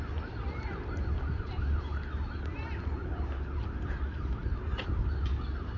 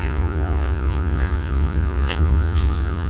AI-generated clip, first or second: second